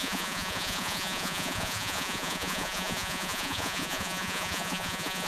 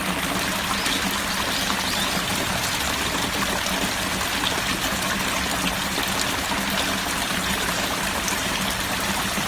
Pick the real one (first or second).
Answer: second